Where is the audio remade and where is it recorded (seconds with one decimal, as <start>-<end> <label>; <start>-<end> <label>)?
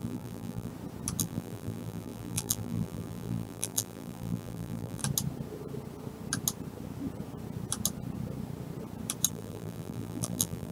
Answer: 0.0-0.7 remade; 0.7-1.2 recorded; 1.2-5.0 remade; 5.0-9.3 recorded; 9.3-10.7 remade